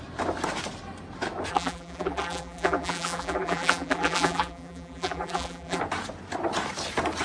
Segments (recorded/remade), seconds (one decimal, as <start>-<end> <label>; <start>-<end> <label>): 0.0-1.5 recorded; 1.5-5.8 remade; 5.8-7.2 recorded